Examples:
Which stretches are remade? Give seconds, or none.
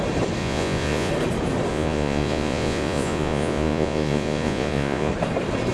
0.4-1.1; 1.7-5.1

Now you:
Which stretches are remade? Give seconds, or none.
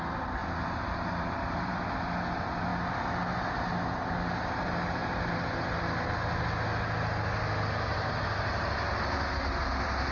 0.4-1.8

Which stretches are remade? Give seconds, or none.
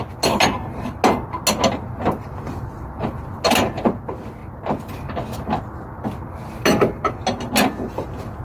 none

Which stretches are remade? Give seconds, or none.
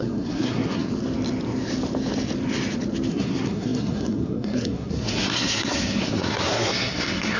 0.0-0.9; 3.1-7.4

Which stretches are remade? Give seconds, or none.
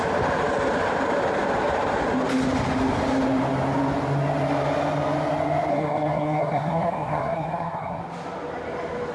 5.7-8.0